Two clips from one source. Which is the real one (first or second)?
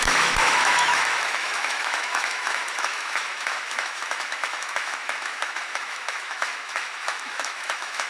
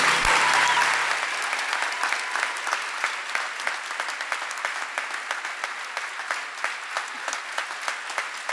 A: second